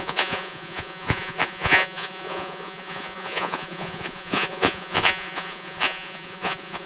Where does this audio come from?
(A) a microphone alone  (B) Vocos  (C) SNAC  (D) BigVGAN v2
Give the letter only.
B